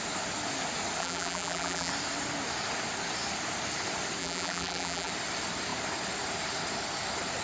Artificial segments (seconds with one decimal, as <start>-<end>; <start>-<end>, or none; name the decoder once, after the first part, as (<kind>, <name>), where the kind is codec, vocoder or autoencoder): 1.0-1.9 (vocoder, BigVGAN v2); 4.2-5.1